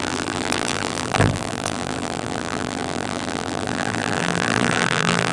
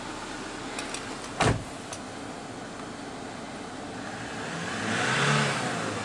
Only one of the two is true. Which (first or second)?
second